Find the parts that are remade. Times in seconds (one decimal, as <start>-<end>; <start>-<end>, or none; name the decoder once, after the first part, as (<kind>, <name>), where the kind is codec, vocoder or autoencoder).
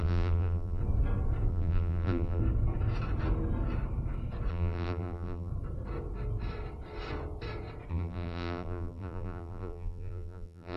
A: 0.0-0.8 (vocoder, BigVGAN v2); 1.5-2.4; 4.5-5.5; 7.9-10.8